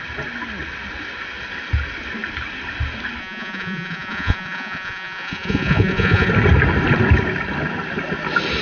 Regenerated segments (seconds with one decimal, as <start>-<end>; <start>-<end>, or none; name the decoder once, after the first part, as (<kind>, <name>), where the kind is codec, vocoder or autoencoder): 3.2-6.3 (vocoder, Vocos)